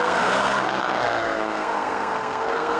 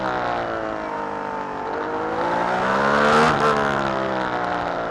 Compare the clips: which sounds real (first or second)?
second